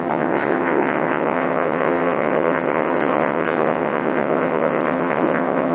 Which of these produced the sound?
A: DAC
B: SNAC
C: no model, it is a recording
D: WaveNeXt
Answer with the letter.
D